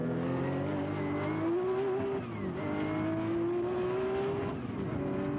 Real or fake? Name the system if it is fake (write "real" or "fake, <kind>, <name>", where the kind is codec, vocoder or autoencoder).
real